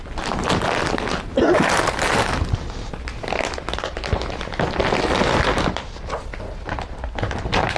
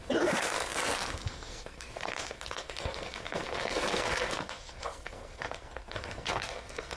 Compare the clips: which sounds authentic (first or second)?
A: first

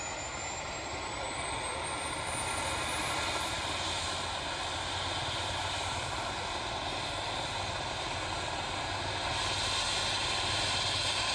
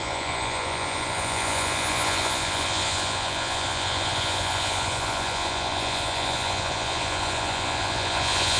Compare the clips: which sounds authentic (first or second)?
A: first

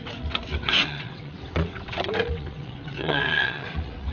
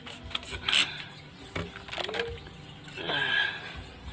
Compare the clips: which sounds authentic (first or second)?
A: second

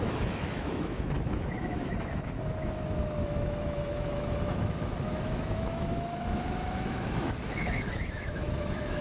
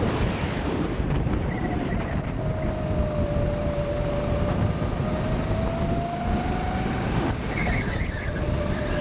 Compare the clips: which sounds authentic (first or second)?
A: second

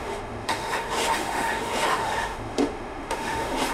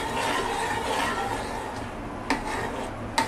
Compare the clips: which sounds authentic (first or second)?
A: second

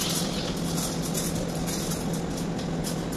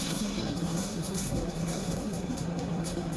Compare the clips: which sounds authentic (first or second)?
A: first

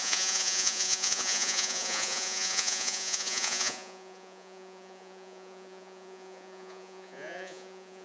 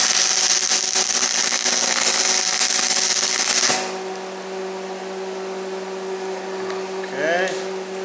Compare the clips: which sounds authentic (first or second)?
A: second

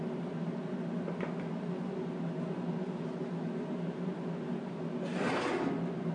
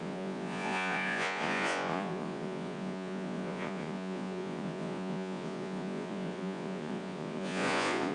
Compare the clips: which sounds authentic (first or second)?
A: first